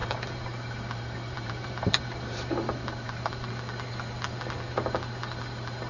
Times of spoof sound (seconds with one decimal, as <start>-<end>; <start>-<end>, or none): 0.0-3.5